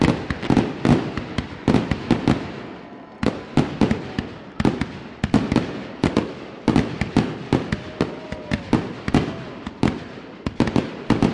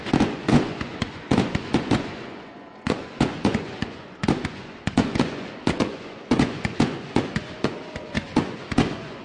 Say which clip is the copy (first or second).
second